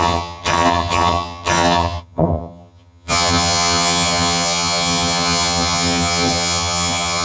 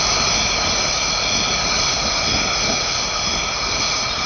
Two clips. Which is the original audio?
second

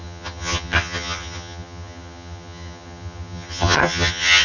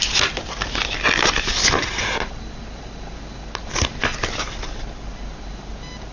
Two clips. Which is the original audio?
second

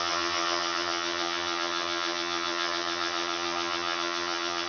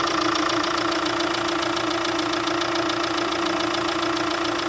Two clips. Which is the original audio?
second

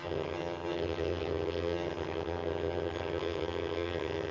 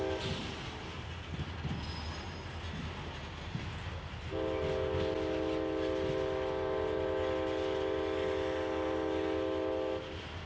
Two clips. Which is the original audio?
second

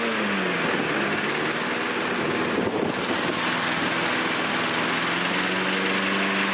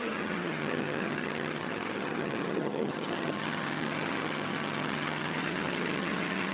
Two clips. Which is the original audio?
first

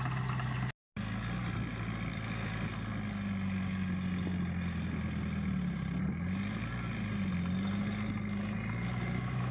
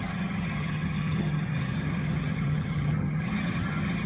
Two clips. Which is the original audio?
first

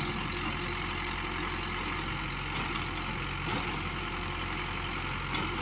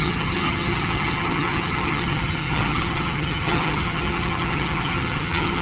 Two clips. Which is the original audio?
first